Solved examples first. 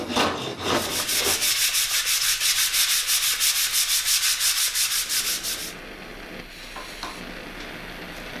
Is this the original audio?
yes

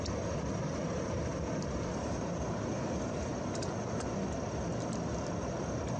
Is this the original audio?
yes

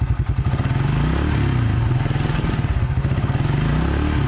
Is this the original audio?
yes